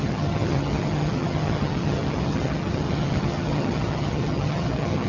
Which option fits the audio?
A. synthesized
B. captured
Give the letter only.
A